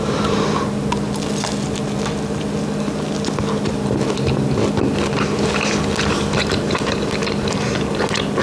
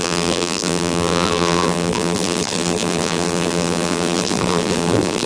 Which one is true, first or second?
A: first